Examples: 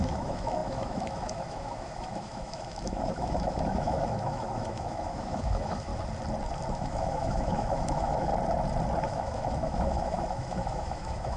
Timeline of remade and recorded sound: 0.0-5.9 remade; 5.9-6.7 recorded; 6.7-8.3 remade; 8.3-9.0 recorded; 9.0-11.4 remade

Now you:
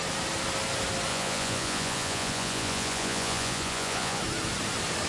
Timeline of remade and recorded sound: 0.0-1.1 recorded; 1.1-4.2 remade; 4.2-5.1 recorded

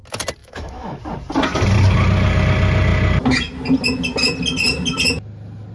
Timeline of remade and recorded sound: 0.0-0.4 recorded; 0.4-1.0 remade; 1.0-5.7 recorded